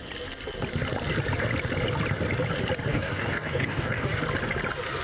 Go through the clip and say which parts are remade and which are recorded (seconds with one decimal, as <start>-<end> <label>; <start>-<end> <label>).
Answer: 0.0-2.9 recorded; 2.9-4.2 remade; 4.2-5.0 recorded

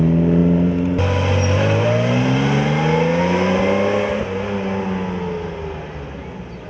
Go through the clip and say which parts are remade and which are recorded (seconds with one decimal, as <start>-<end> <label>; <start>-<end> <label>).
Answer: 0.0-6.7 recorded

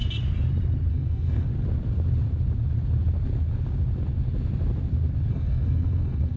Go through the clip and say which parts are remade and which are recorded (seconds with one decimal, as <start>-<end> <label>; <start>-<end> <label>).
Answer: 0.0-0.9 recorded; 0.9-1.5 remade; 1.5-5.3 recorded; 5.3-6.4 remade

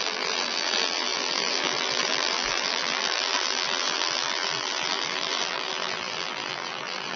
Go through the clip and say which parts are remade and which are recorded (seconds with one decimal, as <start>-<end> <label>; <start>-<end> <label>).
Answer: 0.0-7.2 remade

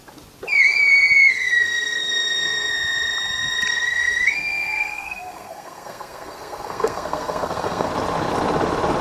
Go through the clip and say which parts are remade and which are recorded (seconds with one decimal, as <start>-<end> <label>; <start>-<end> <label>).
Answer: 0.0-1.3 recorded; 1.3-2.7 remade; 2.7-3.7 recorded; 3.7-7.9 remade; 7.9-9.0 recorded

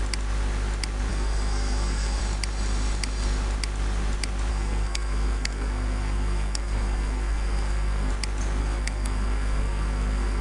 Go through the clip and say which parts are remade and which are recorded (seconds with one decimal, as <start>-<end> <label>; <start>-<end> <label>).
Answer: 0.0-1.1 recorded; 1.1-2.2 remade; 2.2-4.5 recorded; 4.5-8.1 remade; 8.1-8.6 recorded; 8.6-10.4 remade